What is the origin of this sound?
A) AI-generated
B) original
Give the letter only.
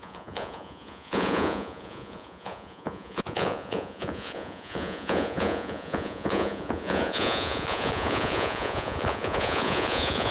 A